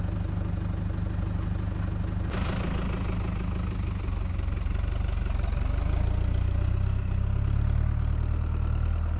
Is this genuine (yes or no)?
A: yes